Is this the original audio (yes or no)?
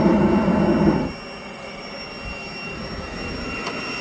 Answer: yes